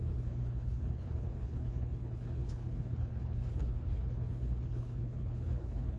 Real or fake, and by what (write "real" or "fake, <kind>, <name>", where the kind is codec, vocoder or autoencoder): fake, codec, HILCodec